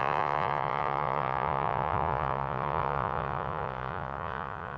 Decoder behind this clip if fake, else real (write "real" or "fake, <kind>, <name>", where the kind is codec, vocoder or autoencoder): fake, vocoder, Vocos